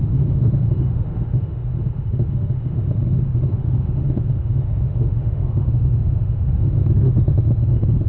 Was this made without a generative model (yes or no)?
no